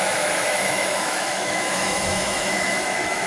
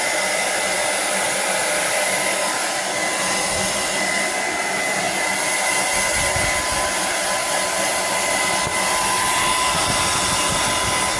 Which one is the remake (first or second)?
first